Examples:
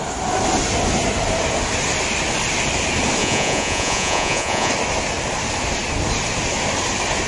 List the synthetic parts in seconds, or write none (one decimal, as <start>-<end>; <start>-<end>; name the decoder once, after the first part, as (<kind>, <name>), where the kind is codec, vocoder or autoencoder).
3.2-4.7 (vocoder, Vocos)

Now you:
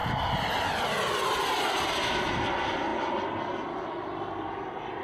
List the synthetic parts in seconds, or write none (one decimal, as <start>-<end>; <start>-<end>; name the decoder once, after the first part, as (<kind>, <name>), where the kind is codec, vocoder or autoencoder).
none

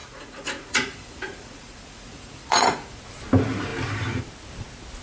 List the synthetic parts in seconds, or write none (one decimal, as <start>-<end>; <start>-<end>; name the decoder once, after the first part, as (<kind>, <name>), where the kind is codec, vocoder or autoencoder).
0.0-3.0 (vocoder, Vocos)